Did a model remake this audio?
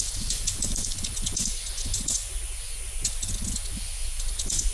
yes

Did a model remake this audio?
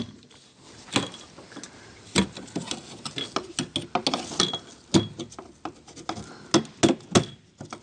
no